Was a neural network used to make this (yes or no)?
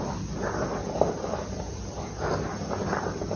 no